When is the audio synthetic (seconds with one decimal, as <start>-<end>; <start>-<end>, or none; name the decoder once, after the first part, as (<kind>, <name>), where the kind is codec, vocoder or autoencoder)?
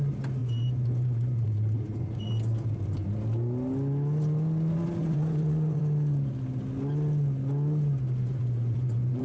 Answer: 0.4-2.3 (vocoder, Vocos); 5.0-5.8; 8.2-9.2